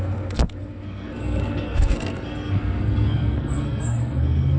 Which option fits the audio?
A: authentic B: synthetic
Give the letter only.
B